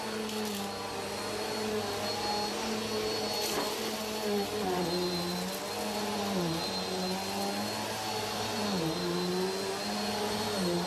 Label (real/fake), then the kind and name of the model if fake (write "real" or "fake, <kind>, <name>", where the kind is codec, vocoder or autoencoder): real